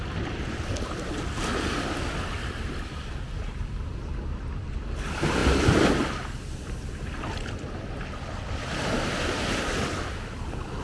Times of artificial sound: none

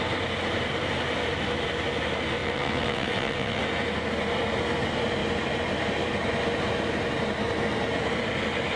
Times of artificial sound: 2.4-3.6 (vocoder, WaveNeXt)